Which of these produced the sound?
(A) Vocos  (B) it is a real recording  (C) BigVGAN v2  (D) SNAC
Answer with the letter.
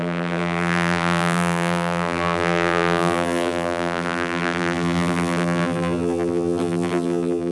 C